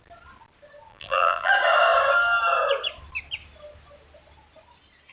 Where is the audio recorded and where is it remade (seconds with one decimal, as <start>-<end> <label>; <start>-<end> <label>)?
0.0-0.9 recorded; 0.9-1.5 remade; 1.5-5.1 recorded